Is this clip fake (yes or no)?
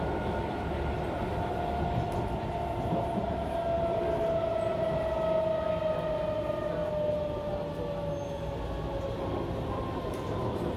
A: no